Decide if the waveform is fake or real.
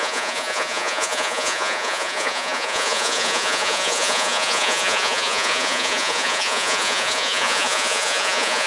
fake